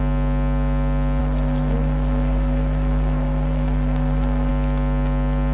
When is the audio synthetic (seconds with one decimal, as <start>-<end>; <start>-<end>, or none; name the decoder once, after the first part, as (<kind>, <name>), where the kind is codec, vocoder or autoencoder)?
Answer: 1.2-4.5 (codec, SNAC)